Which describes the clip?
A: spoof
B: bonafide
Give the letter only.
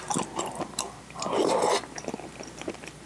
A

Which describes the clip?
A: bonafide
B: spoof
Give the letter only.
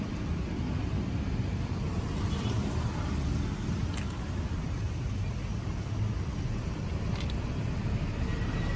A